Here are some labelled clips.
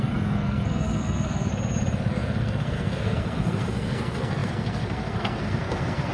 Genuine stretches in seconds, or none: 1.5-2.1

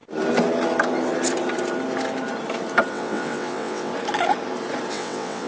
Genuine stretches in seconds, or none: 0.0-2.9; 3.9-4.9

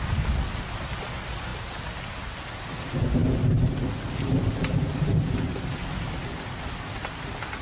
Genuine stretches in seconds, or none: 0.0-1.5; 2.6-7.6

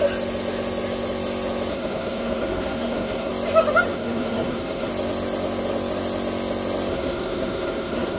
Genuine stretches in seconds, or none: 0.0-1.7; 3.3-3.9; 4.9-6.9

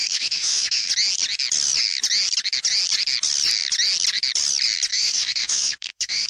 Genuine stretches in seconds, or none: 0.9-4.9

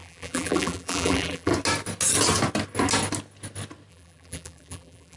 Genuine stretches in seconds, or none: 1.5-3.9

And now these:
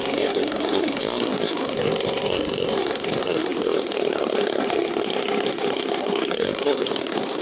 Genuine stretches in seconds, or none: none